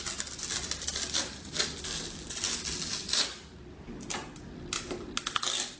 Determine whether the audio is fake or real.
real